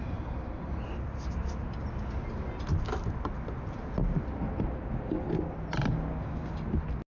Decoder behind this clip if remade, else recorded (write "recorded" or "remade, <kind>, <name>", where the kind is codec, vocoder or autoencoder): recorded